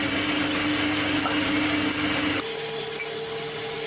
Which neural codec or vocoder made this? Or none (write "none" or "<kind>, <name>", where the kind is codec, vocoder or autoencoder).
none